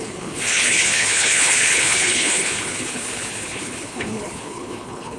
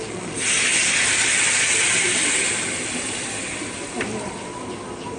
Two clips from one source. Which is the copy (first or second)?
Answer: first